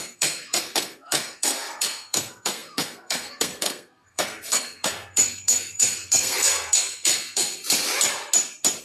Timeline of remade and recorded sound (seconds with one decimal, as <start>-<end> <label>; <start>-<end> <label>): 0.0-7.6 remade; 7.6-8.8 recorded

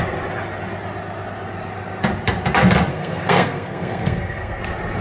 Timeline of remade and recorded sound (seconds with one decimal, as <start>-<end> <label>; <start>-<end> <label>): 0.0-2.9 recorded; 2.9-4.6 remade; 4.6-5.0 recorded

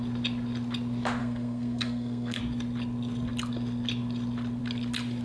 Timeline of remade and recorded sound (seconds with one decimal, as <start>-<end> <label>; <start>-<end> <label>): 0.0-1.2 recorded; 1.2-2.4 remade; 2.4-5.2 recorded

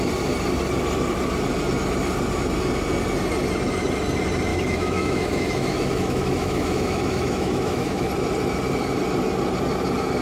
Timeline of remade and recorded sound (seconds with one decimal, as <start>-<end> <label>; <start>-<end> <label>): 0.0-4.5 recorded; 4.5-8.1 remade; 8.1-10.2 recorded

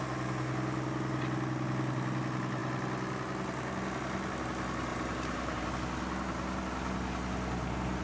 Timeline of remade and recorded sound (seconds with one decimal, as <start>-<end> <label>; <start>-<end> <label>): 0.0-4.9 recorded; 4.9-5.7 remade; 5.7-8.0 recorded

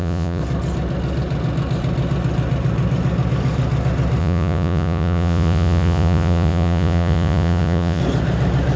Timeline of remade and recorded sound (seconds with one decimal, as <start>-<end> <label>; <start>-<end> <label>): 0.0-0.4 remade; 0.4-4.2 recorded; 4.2-8.0 remade; 8.0-8.8 recorded

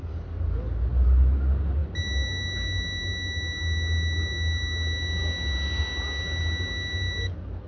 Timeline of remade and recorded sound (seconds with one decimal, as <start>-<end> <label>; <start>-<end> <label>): 0.0-7.7 recorded

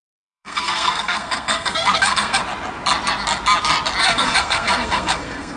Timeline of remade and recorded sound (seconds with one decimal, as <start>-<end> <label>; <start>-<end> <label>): 0.0-2.4 remade; 2.4-4.0 recorded; 4.0-5.6 remade